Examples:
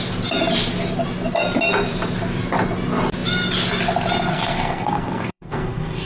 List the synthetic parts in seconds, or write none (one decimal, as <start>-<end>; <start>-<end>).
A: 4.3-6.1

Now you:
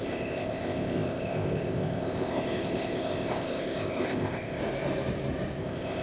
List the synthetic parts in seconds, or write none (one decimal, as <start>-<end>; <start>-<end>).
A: 0.0-4.6; 5.6-6.0

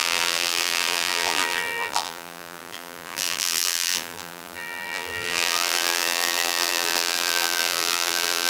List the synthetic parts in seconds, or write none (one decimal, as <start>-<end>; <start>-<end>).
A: 0.0-8.5